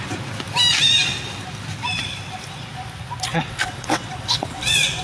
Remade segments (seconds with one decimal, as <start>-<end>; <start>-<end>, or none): 3.3-5.0